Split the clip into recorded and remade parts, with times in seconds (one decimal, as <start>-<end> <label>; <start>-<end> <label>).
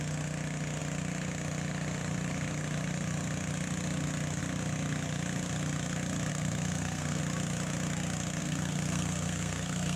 0.0-6.3 recorded; 6.3-7.2 remade; 7.2-8.4 recorded; 8.4-10.0 remade